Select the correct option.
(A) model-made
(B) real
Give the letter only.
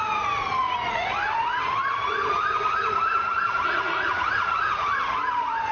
A